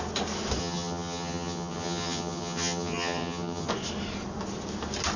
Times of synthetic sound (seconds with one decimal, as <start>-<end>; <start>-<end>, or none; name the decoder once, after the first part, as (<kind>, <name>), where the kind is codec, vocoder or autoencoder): 0.6-3.7 (vocoder, HiFi-GAN)